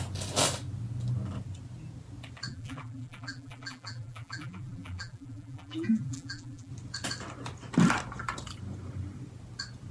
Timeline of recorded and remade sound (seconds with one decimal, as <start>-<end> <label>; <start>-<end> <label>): 0.0-2.5 recorded; 2.5-6.7 remade; 6.7-9.9 recorded